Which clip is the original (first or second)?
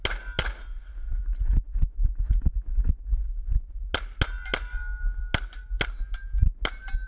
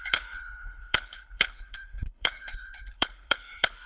first